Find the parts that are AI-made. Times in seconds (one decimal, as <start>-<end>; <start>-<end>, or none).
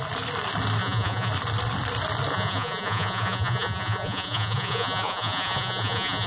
0.8-1.3; 2.3-6.3